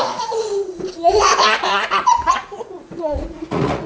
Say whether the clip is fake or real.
fake